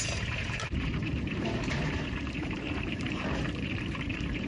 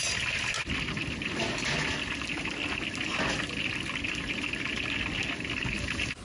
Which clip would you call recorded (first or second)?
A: second